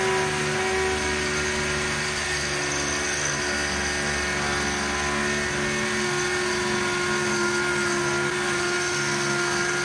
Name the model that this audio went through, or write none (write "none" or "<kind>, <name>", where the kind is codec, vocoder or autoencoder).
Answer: none